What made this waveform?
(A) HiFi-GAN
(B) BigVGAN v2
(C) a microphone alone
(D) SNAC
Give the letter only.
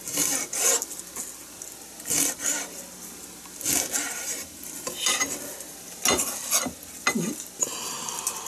C